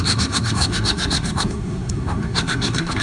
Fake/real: fake